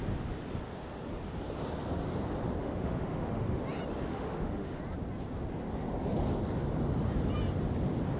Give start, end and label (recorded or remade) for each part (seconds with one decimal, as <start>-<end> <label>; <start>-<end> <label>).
0.0-2.6 recorded; 2.6-3.6 remade; 3.6-4.1 recorded; 4.1-4.8 remade; 4.8-8.2 recorded